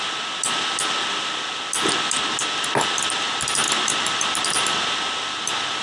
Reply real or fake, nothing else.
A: real